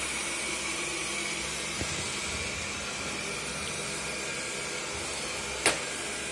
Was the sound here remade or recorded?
recorded